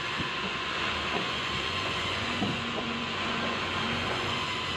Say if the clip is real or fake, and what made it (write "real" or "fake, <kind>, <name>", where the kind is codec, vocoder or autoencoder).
fake, vocoder, Vocos